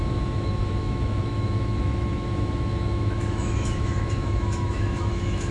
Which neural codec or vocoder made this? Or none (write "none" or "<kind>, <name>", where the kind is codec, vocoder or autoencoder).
autoencoder, DAC-VAE